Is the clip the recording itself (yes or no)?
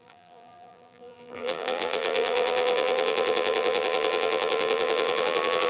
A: no